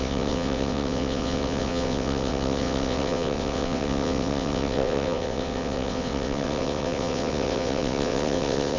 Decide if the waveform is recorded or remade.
remade